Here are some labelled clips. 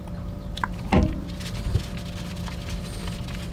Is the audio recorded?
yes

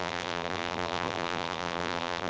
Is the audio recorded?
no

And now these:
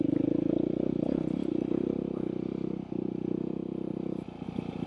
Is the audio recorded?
yes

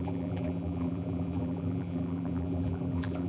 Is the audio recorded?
no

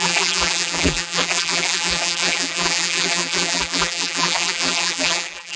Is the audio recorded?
no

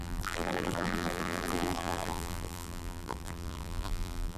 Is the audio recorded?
no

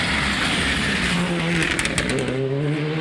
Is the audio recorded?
yes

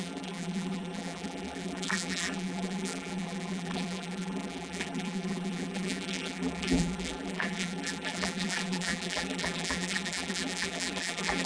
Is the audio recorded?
no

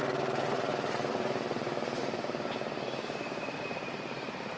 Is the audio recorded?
no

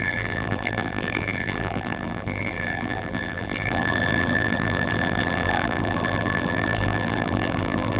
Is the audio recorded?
no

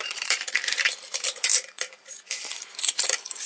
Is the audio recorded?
no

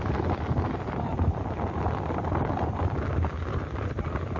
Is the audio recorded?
yes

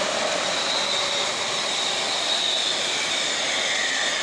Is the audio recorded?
no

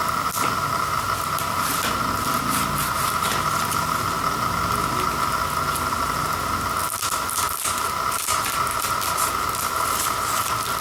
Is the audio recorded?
yes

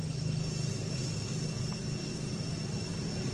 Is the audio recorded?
yes